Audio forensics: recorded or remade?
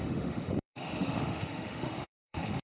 remade